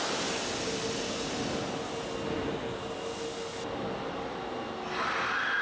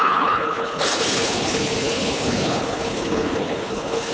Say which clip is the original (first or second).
first